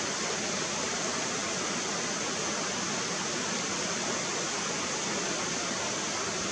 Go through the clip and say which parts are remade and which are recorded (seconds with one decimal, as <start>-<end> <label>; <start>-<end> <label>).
0.0-6.5 recorded